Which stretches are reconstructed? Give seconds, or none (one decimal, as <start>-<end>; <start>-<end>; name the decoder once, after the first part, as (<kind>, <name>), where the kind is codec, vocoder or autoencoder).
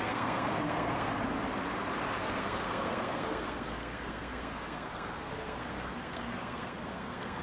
0.0-1.1 (codec, SNAC); 2.3-7.4